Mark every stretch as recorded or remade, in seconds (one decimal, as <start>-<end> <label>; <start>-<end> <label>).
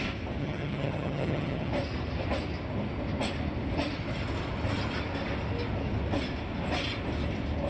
0.0-0.4 recorded; 0.4-1.7 remade; 1.7-7.7 recorded